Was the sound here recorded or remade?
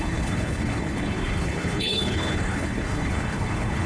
remade